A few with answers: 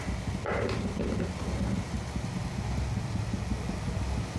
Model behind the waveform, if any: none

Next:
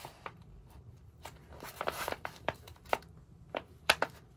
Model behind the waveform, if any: vocoder, BigVGAN v2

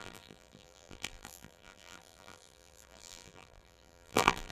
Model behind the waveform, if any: vocoder, BigVGAN v2